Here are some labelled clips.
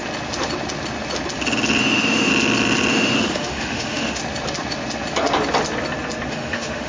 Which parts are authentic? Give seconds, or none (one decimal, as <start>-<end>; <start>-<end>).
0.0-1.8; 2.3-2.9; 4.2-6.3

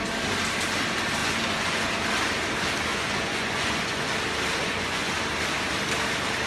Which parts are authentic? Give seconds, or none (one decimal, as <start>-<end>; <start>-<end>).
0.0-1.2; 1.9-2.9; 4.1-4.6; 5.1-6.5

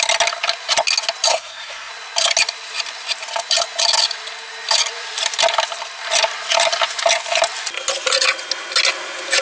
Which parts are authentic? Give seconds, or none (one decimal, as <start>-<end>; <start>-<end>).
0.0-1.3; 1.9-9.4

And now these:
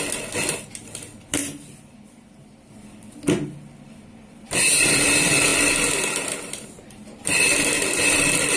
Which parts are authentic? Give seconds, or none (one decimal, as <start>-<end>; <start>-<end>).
0.0-8.6